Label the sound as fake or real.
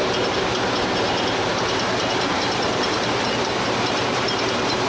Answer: fake